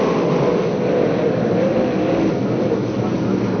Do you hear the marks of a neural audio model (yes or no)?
no